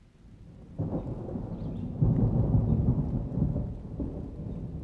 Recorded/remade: recorded